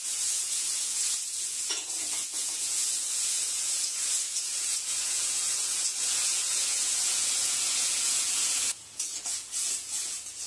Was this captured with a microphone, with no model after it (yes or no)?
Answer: no